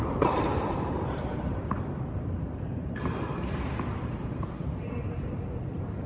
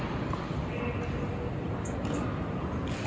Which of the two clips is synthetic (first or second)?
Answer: first